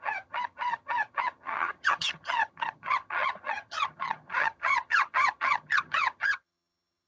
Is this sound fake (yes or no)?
yes